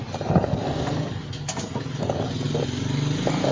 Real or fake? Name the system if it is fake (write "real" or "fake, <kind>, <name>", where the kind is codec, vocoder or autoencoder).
real